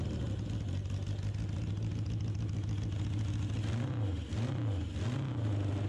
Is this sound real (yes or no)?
yes